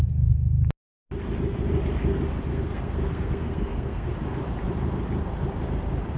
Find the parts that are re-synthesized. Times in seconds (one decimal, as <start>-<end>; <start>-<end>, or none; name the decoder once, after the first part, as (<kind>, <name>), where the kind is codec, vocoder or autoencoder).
2.5-4.1 (codec, SNAC)